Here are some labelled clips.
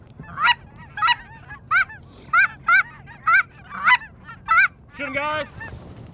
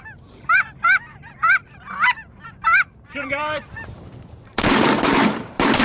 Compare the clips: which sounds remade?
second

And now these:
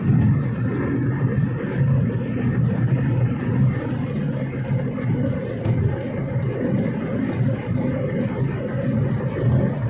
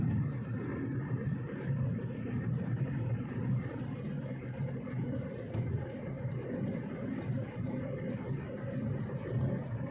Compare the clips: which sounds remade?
second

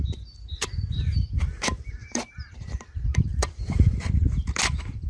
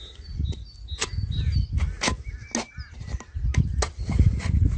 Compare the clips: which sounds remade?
first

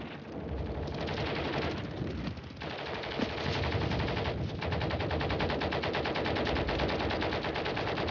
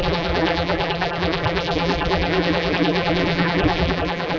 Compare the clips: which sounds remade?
second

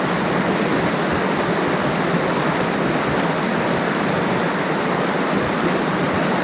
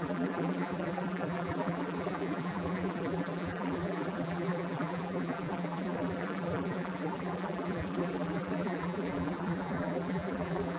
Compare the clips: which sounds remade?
second